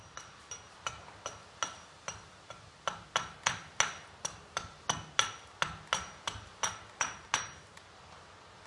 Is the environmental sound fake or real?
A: real